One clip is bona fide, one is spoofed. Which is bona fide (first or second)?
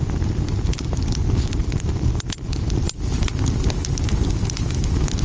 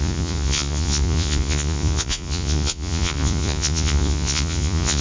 first